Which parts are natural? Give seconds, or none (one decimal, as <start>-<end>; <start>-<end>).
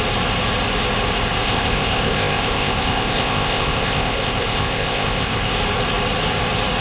0.0-1.4; 5.5-6.8